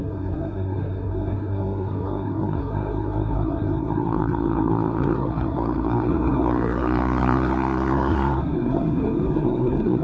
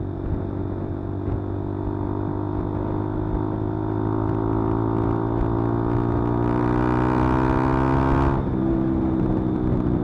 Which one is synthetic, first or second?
first